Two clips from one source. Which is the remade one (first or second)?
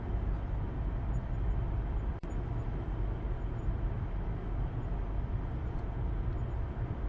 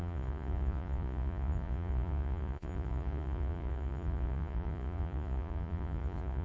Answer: second